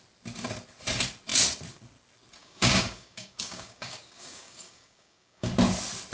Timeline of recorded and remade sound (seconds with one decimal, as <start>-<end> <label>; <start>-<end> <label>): 0.0-2.4 recorded; 2.4-5.5 remade; 5.5-6.1 recorded